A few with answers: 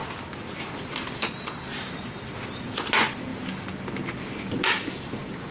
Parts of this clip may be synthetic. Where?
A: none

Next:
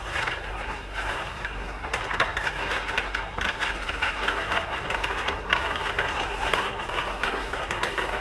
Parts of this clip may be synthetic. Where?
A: 0.0-8.2 (codec, SNAC)

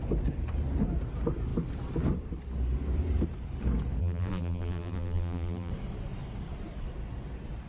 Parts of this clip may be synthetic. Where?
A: 4.0-5.7 (vocoder, BigVGAN v2)

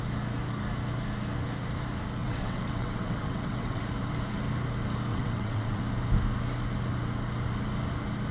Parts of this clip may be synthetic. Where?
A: 2.2-3.8 (vocoder, WaveNeXt); 5.1-5.8

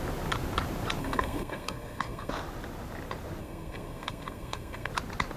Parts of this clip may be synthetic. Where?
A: 1.0-2.3 (codec, SNAC); 3.4-4.9

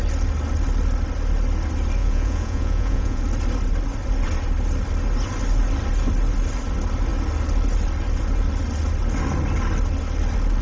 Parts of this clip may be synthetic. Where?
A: 2.0-3.2 (vocoder, Vocos)